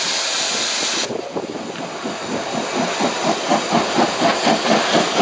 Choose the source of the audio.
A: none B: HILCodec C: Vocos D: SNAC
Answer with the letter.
A